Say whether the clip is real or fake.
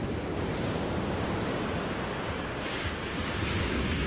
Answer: fake